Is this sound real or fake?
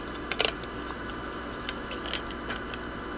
real